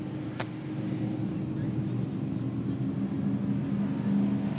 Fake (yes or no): no